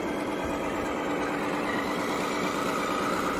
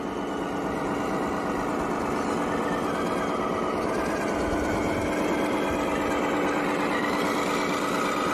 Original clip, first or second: second